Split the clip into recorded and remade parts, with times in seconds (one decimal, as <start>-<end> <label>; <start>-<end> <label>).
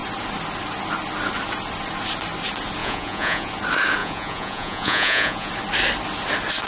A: 0.0-2.8 recorded; 2.8-3.5 remade; 3.5-4.0 recorded; 4.0-5.5 remade; 5.5-6.7 recorded